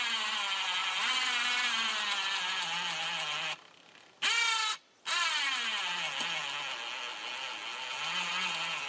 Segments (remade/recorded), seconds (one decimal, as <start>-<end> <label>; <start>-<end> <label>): 0.0-8.9 recorded

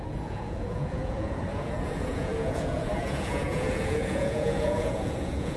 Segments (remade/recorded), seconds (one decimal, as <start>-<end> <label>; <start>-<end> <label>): 0.0-5.6 remade

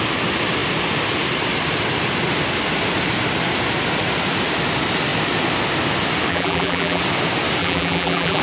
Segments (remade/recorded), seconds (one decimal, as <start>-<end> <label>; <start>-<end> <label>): 0.0-6.3 recorded; 6.3-7.0 remade; 7.0-7.6 recorded; 7.6-8.4 remade

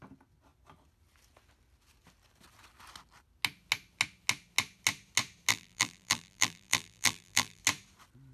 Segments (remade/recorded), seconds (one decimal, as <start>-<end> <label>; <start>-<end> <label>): 0.0-5.5 recorded; 5.5-7.6 remade; 7.6-8.3 recorded

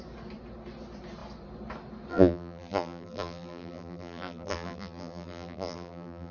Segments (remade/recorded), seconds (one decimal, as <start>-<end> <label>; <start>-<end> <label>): 0.0-2.1 recorded; 2.1-6.3 remade